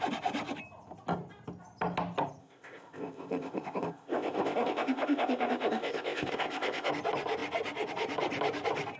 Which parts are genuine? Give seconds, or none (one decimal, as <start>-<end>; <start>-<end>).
0.0-2.4; 6.9-9.0

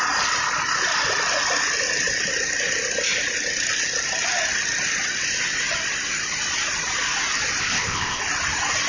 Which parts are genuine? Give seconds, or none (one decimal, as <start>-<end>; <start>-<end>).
0.0-7.6; 8.2-8.9